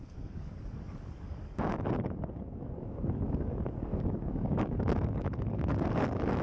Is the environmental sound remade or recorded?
remade